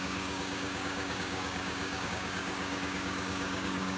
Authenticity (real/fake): fake